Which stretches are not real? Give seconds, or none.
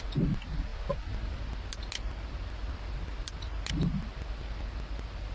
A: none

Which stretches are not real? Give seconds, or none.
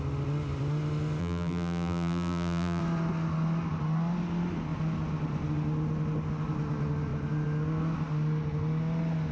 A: 1.2-2.8 (vocoder, BigVGAN v2)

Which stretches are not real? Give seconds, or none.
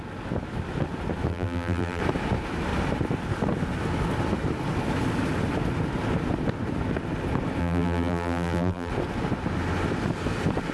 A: 1.3-2.0 (vocoder, BigVGAN v2); 7.6-8.9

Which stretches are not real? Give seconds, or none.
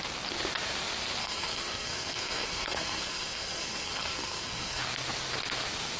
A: 1.2-4.8 (codec, SNAC)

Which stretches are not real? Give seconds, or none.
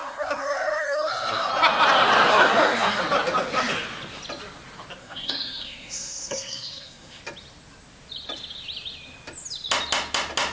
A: 0.0-1.5 (codec, SNAC); 2.3-3.0; 5.0-7.2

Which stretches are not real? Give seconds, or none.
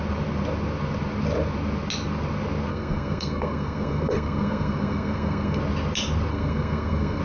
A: 2.7-5.6 (codec, SNAC); 6.3-7.2